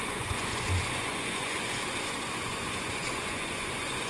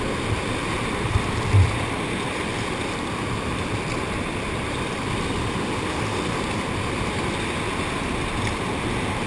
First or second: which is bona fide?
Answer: second